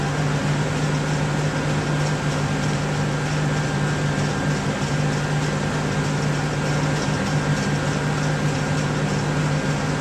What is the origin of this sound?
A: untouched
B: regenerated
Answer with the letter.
A